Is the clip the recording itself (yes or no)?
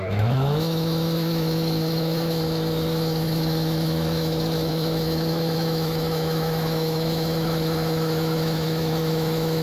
no